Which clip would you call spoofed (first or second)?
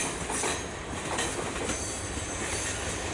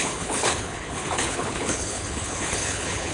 second